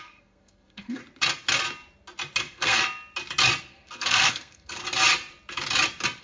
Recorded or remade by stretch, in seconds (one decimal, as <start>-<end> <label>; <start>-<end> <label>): 0.0-1.0 remade; 1.0-2.4 recorded; 2.4-2.8 remade; 2.8-3.6 recorded; 3.6-4.8 remade; 4.8-6.2 recorded